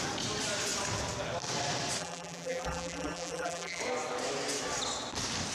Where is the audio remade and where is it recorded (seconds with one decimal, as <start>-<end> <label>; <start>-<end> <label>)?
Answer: 0.0-2.0 recorded; 2.0-3.8 remade; 3.8-5.5 recorded